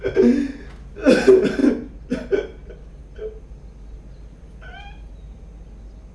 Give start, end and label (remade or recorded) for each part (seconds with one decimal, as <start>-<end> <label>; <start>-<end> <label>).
0.0-6.1 recorded